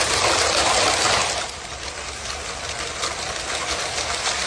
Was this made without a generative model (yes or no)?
yes